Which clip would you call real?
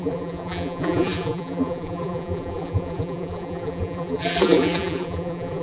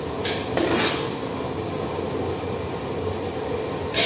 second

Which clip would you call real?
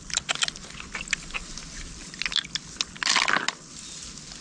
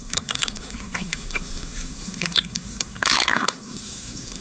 first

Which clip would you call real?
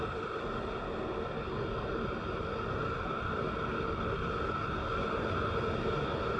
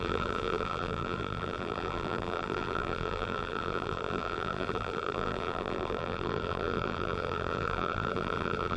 first